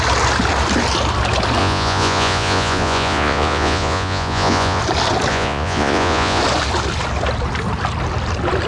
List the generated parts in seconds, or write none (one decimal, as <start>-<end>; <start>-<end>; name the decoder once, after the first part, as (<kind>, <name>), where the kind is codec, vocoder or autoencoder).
1.6-4.8 (vocoder, Vocos); 5.3-6.4